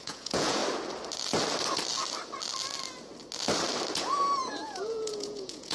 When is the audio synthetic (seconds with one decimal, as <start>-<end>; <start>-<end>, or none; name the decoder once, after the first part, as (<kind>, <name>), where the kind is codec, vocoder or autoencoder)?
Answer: 0.0-0.6 (vocoder, Vocos); 4.0-5.7